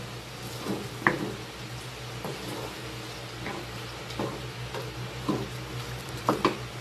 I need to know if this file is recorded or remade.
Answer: recorded